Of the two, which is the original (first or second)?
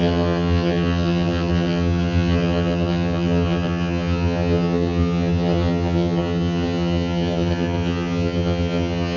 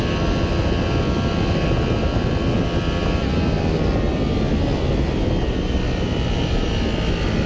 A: second